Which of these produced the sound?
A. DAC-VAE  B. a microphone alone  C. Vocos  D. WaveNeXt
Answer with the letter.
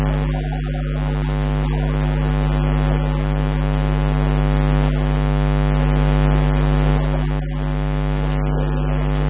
B